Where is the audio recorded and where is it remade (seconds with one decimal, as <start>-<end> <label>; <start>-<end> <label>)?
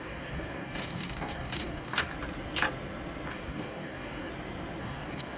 0.0-2.1 remade; 2.1-3.3 recorded; 3.3-4.3 remade; 4.3-4.8 recorded; 4.8-5.4 remade